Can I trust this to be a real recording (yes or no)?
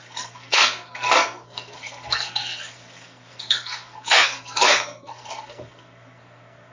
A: no